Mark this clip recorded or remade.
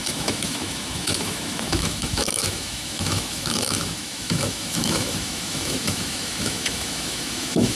remade